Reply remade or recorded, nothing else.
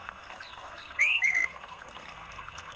remade